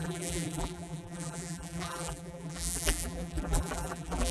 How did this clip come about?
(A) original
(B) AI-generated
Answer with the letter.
B